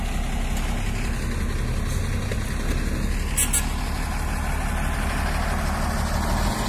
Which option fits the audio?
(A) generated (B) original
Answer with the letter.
B